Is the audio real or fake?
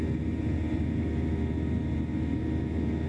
real